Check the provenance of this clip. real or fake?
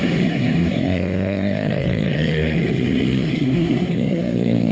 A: fake